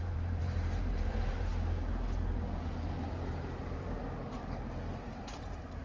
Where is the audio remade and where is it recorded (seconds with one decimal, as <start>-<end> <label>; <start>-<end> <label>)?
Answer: 0.0-1.5 remade; 1.5-3.1 recorded; 3.1-4.0 remade; 4.0-4.9 recorded; 4.9-5.8 remade